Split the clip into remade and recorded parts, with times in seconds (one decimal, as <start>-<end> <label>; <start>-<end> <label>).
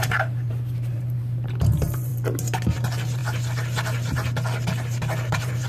0.0-2.1 remade; 2.1-2.7 recorded; 2.7-3.2 remade; 3.2-5.3 recorded; 5.3-5.7 remade